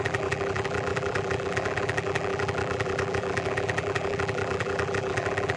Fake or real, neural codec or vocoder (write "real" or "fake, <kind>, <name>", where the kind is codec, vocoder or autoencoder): fake, vocoder, BigVGAN v2